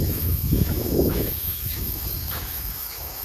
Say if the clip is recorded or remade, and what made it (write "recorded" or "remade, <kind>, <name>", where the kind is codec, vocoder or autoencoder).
remade, autoencoder, DAC-VAE